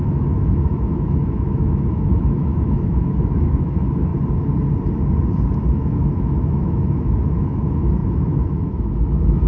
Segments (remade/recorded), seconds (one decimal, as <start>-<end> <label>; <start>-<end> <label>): 0.0-4.1 remade; 4.1-5.7 recorded; 5.7-9.5 remade